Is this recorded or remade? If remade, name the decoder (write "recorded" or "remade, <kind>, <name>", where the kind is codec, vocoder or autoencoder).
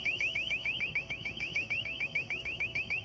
remade, autoencoder, DAC-VAE